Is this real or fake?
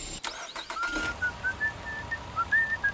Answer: real